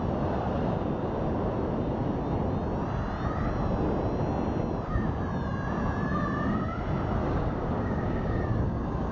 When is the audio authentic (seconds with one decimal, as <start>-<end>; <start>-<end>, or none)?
0.0-7.2